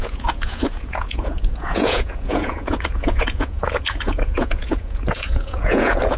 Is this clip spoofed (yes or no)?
yes